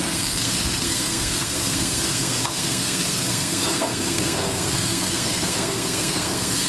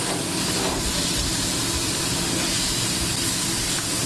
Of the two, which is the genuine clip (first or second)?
second